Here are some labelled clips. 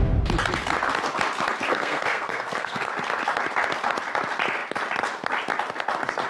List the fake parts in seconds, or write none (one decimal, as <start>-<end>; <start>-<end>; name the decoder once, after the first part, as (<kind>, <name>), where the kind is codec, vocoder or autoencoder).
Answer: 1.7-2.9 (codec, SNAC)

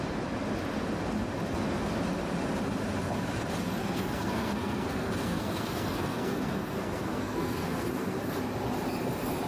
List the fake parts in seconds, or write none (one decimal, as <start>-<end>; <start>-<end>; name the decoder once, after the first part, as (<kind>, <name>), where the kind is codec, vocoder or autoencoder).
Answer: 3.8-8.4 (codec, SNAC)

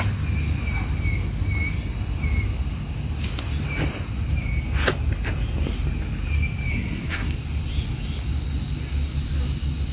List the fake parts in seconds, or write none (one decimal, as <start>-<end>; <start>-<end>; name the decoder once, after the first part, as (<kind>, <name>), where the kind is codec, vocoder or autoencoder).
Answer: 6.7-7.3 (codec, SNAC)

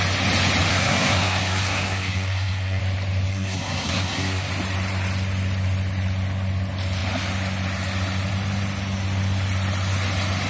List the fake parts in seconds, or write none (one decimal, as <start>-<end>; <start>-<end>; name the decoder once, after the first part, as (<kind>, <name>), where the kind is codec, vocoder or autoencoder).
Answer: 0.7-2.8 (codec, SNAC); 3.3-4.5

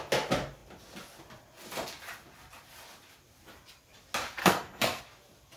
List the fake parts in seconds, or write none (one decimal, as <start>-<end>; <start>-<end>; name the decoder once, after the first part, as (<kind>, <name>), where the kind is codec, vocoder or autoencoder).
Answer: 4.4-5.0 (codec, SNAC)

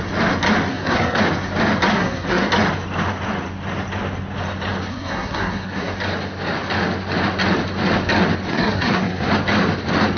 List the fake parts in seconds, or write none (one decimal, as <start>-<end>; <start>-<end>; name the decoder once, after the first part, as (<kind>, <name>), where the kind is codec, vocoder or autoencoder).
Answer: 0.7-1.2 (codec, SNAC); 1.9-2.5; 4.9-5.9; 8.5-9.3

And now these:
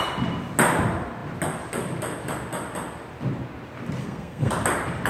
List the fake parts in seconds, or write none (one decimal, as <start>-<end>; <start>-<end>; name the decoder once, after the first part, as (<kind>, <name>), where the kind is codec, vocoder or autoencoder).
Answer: 4.0-4.5 (codec, SNAC)

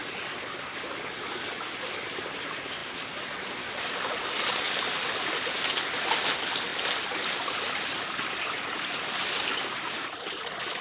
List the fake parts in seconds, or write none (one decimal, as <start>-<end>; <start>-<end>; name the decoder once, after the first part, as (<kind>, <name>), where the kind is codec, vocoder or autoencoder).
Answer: none